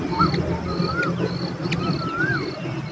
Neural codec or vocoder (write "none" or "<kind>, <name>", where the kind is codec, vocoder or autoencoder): none